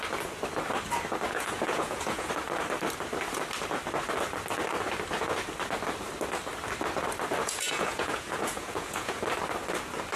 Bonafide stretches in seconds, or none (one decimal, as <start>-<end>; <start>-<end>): 0.0-1.3; 2.3-7.4; 9.2-10.2